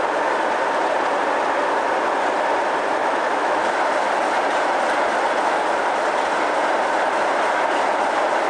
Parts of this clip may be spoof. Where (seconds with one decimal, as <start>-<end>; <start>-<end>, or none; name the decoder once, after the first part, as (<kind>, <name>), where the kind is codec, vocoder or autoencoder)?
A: 3.0-3.7 (autoencoder, DAC-VAE)